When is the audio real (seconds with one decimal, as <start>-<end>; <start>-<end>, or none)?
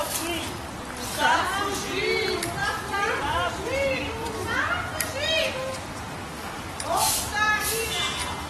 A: 0.0-2.6; 3.5-6.3; 7.0-8.5